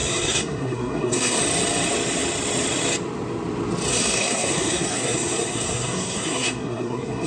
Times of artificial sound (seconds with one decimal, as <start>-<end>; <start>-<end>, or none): 0.0-1.4; 3.9-7.3